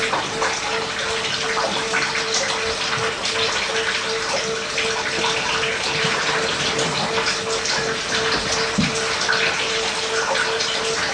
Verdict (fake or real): real